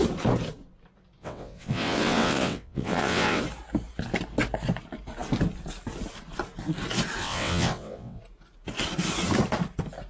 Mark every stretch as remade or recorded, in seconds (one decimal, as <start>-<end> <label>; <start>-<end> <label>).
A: 0.0-1.2 recorded; 1.2-3.4 remade; 3.4-7.2 recorded; 7.2-8.2 remade; 8.2-10.1 recorded